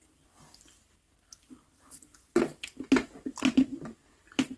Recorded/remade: recorded